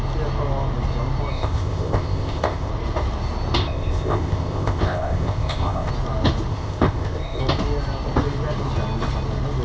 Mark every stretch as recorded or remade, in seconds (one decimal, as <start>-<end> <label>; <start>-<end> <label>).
0.0-1.3 recorded; 1.3-2.7 remade; 2.7-3.6 recorded; 3.6-5.9 remade; 5.9-6.5 recorded; 6.5-7.4 remade; 7.4-9.6 recorded